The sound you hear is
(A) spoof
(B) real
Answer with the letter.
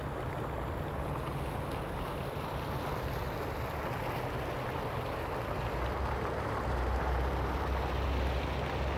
B